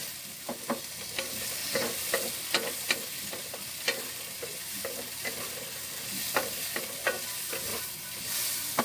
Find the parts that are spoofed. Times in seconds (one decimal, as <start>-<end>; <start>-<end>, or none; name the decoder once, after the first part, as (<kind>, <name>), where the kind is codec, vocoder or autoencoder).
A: none